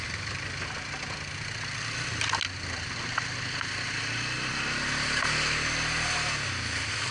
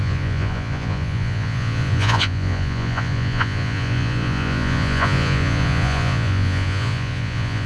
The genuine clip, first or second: first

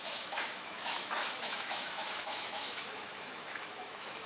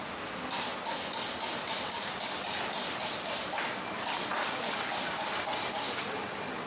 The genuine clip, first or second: second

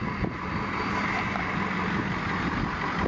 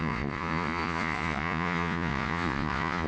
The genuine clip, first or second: first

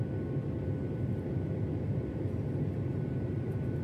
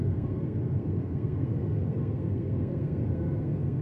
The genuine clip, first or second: first